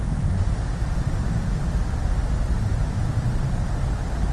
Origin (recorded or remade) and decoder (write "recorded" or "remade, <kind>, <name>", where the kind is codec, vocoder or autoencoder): recorded